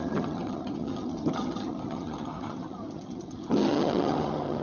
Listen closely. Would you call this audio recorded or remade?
remade